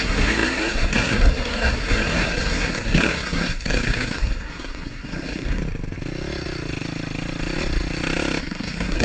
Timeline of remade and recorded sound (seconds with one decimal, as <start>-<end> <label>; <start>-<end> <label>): 0.0-5.6 remade; 5.6-8.4 recorded; 8.4-9.0 remade